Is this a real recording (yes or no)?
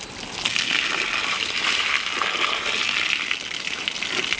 yes